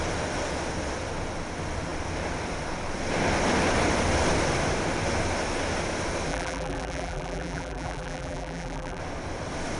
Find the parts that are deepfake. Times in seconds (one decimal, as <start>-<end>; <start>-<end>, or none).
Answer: 6.3-9.0